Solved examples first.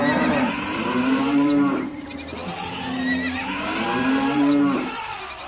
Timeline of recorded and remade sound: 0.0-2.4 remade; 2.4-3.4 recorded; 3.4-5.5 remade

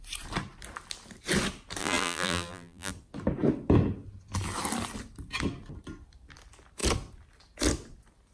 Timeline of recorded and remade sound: 0.0-1.8 recorded; 1.8-2.9 remade; 2.9-8.3 recorded

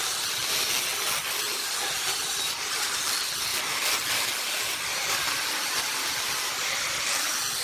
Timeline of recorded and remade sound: 0.0-1.5 recorded; 1.5-2.9 remade; 2.9-3.5 recorded; 3.5-7.0 remade; 7.0-7.6 recorded

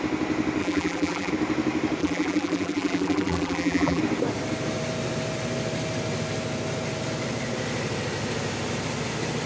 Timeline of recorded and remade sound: 0.0-0.6 recorded; 0.6-1.3 remade; 1.3-2.0 recorded; 2.0-4.0 remade; 4.0-9.5 recorded

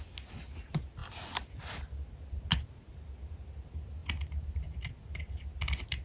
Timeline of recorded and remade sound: 0.0-6.0 recorded

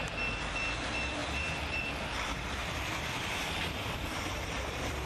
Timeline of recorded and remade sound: 0.0-5.1 remade

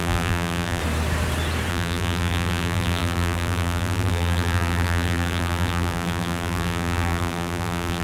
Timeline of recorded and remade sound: 0.0-0.8 remade; 0.8-1.7 recorded; 1.7-8.0 remade

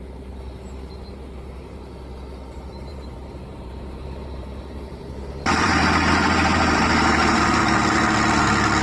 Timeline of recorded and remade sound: 0.0-2.9 recorded; 2.9-7.6 remade; 7.6-8.8 recorded